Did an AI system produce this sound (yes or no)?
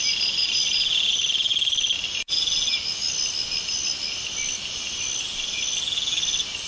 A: no